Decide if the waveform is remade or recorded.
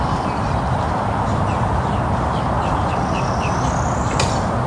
recorded